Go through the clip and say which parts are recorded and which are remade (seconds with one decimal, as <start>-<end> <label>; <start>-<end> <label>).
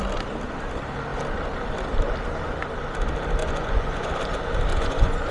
0.0-3.4 recorded; 3.4-4.1 remade; 4.1-4.7 recorded; 4.7-5.3 remade